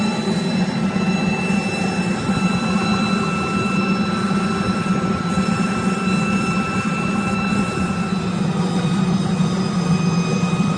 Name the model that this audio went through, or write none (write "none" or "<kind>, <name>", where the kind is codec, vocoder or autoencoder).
vocoder, BigVGAN v2